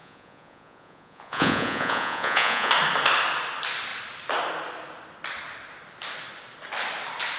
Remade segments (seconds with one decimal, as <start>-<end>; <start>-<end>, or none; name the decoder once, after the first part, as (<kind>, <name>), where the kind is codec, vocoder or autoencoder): 0.0-2.7 (vocoder, Vocos)